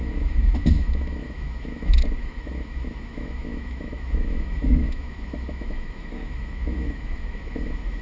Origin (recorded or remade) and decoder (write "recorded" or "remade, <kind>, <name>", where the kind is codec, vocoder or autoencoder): remade, autoencoder, DAC-VAE